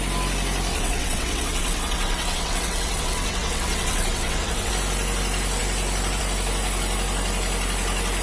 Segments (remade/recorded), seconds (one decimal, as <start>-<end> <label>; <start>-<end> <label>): 0.0-0.7 recorded; 0.7-4.7 remade; 4.7-8.2 recorded